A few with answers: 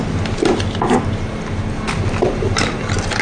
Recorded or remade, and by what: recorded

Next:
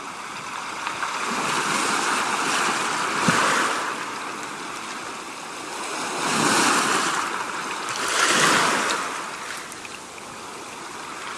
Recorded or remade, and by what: recorded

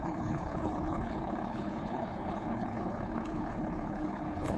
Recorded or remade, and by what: remade, codec, HILCodec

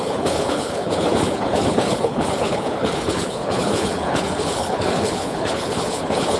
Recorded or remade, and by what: remade, codec, HILCodec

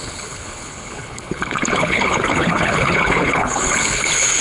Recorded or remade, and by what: remade, codec, HILCodec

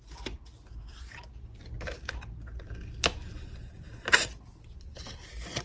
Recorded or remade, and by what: recorded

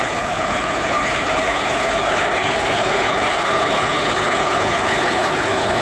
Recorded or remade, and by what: remade, codec, HILCodec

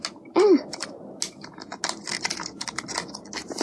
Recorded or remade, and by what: recorded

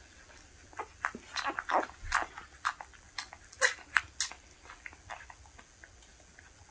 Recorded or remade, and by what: recorded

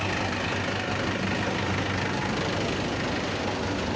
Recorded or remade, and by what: recorded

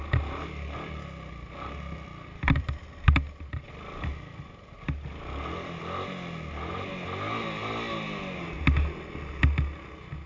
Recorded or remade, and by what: recorded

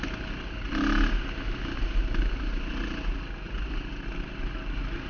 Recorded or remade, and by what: recorded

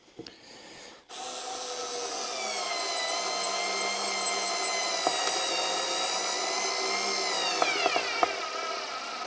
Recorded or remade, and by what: recorded